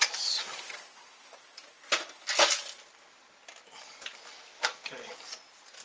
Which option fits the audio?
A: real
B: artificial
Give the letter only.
A